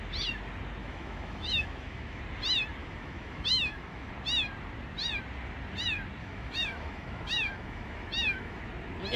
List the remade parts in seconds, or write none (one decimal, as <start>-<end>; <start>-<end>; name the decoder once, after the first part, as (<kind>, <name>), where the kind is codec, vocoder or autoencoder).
0.8-2.2 (autoencoder, DAC-VAE); 2.8-4.1; 6.2-8.6